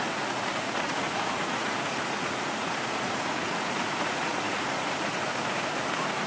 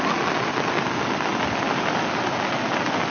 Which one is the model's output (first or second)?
first